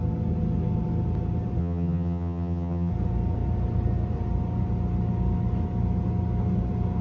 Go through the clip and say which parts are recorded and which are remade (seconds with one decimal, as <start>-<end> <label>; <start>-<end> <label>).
0.0-1.6 recorded; 1.6-2.9 remade; 2.9-7.0 recorded